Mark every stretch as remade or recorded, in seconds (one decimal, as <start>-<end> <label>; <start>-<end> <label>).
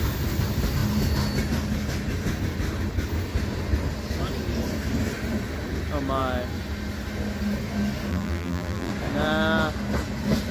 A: 0.0-8.1 recorded; 8.1-8.9 remade; 8.9-10.5 recorded